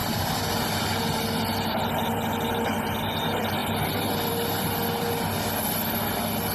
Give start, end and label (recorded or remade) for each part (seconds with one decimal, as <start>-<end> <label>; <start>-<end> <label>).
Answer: 0.0-6.5 recorded